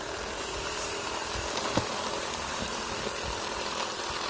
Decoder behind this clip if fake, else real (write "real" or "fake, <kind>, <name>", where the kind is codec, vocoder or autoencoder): real